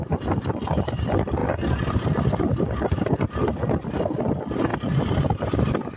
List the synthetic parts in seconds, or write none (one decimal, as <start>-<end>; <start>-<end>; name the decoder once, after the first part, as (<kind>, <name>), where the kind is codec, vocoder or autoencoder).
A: none